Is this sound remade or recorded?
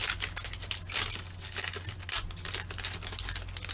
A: recorded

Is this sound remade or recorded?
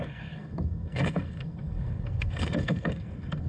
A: remade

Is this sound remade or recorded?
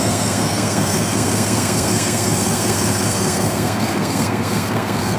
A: remade